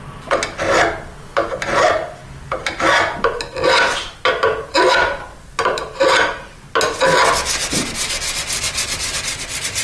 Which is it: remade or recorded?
recorded